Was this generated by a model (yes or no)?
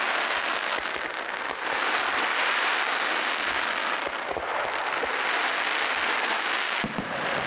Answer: no